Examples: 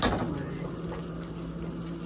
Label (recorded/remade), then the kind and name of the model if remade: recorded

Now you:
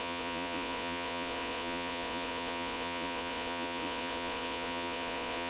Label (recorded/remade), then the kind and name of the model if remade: remade, vocoder, Vocos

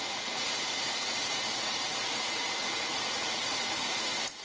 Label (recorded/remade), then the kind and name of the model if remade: remade, vocoder, Vocos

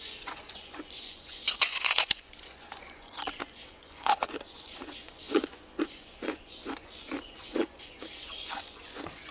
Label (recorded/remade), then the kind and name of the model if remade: remade, vocoder, Vocos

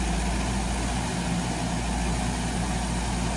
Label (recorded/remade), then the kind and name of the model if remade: recorded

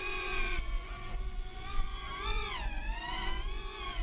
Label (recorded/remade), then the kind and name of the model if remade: remade, vocoder, Vocos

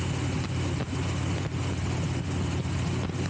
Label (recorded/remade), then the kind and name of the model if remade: recorded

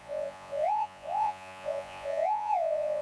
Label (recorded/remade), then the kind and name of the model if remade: remade, vocoder, Vocos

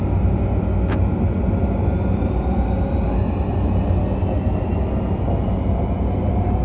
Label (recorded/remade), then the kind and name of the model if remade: recorded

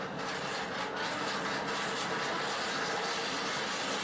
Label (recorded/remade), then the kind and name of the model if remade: recorded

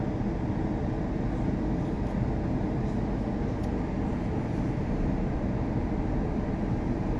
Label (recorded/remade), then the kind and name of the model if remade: recorded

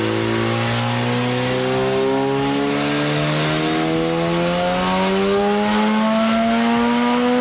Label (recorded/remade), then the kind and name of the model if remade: recorded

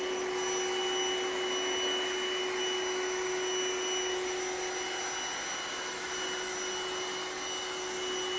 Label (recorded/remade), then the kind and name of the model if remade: recorded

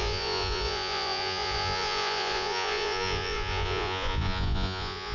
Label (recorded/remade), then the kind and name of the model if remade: remade, vocoder, Vocos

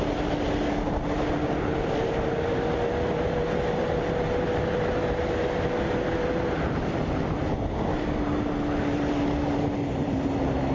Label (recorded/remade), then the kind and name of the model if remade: recorded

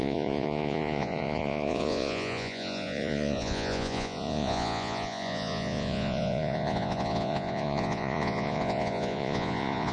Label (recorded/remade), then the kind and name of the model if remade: remade, vocoder, Vocos